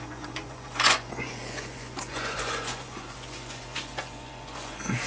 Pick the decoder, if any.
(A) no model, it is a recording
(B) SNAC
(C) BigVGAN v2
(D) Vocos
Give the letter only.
D